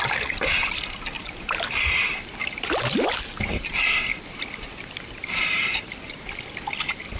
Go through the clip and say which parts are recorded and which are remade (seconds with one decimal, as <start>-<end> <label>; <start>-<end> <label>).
0.0-7.2 recorded